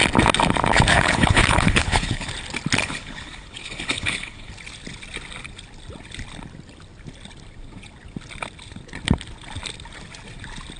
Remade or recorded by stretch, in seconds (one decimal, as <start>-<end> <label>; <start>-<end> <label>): 0.0-0.9 recorded; 0.9-2.3 remade; 2.3-2.8 recorded; 2.8-4.5 remade; 4.5-10.8 recorded